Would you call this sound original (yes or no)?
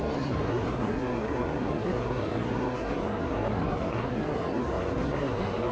no